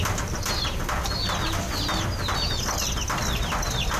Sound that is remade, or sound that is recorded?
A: recorded